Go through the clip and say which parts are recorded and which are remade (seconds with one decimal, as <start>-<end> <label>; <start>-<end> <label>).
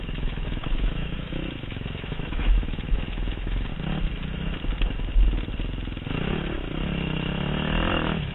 0.0-3.7 remade; 3.7-7.9 recorded; 7.9-8.3 remade